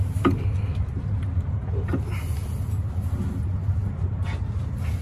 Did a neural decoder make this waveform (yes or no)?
no